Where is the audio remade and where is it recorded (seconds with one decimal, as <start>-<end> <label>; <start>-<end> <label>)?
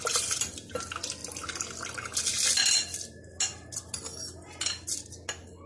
0.0-5.7 recorded